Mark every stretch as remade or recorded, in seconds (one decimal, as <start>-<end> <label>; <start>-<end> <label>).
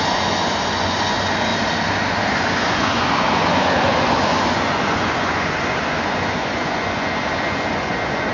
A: 0.0-1.5 remade; 1.5-2.3 recorded; 2.3-8.3 remade